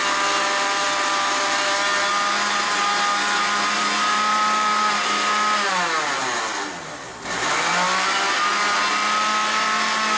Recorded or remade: recorded